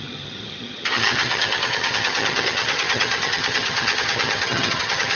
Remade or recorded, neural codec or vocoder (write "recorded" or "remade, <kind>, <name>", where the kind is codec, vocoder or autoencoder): remade, vocoder, HiFi-GAN